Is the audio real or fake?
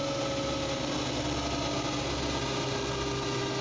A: real